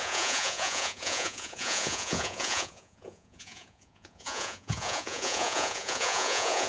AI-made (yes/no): yes